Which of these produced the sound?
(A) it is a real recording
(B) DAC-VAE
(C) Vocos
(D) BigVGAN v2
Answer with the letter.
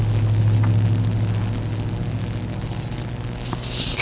A